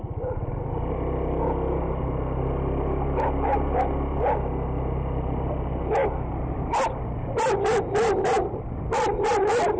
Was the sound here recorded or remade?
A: recorded